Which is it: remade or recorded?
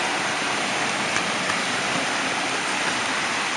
recorded